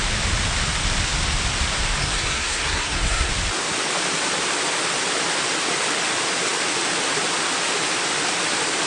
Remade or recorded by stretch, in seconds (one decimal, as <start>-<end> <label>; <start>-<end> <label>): 0.0-2.0 recorded; 2.0-3.3 remade; 3.3-8.9 recorded